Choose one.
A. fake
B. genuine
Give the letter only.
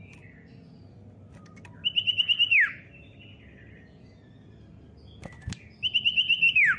B